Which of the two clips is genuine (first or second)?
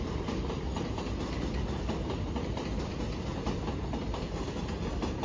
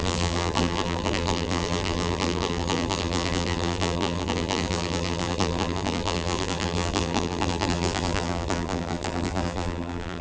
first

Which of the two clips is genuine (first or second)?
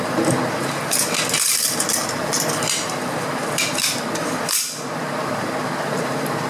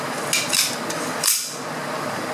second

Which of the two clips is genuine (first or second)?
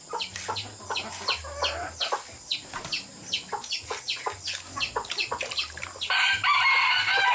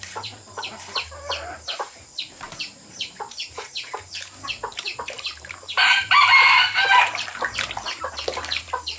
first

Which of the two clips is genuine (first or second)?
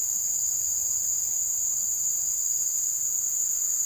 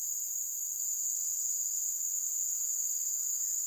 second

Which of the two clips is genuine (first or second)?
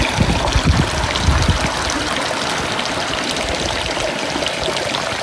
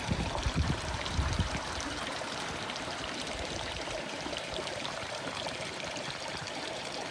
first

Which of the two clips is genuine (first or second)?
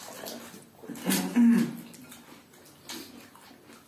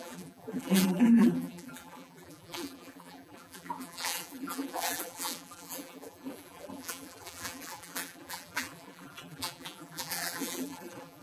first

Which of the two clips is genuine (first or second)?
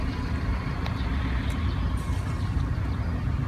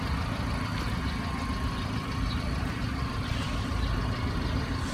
first